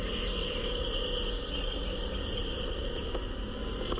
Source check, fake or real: real